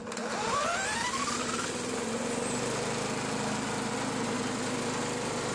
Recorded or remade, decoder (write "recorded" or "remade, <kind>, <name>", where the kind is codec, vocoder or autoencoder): recorded